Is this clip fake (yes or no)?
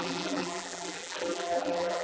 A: yes